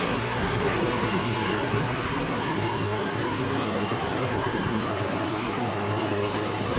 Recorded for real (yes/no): no